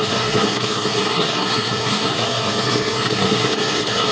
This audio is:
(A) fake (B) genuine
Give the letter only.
A